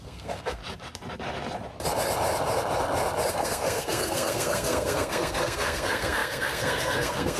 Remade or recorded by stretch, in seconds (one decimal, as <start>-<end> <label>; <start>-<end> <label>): 0.0-0.6 remade; 0.6-3.3 recorded; 3.3-7.4 remade